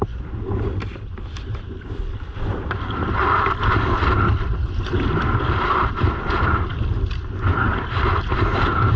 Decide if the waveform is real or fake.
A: fake